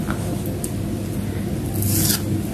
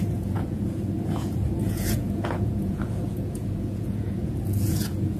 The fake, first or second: second